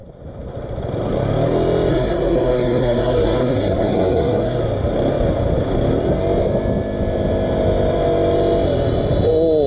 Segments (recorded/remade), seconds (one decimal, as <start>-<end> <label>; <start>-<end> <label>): 0.0-1.9 recorded; 1.9-4.6 remade; 4.6-9.7 recorded